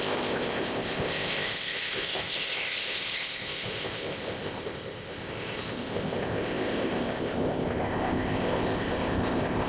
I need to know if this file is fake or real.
fake